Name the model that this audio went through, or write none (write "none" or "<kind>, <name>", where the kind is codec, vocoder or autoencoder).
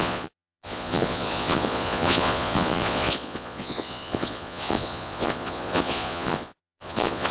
vocoder, Vocos